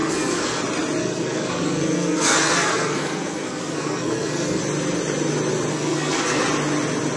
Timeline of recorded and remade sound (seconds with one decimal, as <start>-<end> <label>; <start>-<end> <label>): 0.0-0.6 remade; 0.6-1.0 recorded; 1.0-4.6 remade; 4.6-5.7 recorded; 5.7-6.4 remade; 6.4-7.2 recorded